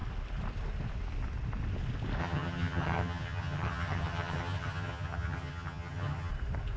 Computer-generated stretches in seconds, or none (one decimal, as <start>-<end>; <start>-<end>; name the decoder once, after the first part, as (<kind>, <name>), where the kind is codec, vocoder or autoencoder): 2.2-6.3 (vocoder, HiFi-GAN)